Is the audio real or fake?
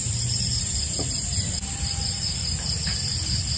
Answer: fake